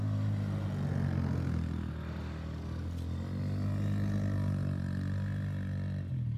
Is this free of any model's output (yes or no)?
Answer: yes